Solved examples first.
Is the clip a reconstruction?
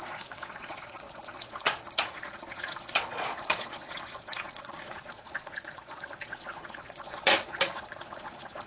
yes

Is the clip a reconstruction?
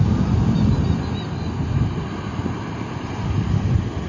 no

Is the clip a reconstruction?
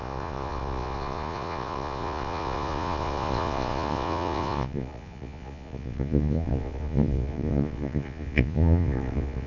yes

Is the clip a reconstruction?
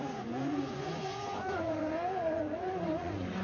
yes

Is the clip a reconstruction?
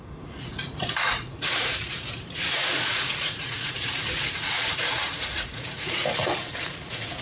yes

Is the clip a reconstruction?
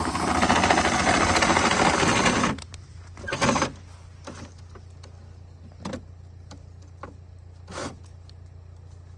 no